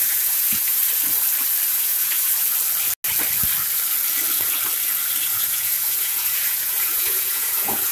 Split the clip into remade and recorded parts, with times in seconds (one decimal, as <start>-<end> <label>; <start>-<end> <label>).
0.0-0.8 remade; 0.8-1.7 recorded; 1.7-2.3 remade; 2.3-5.3 recorded; 5.3-7.9 remade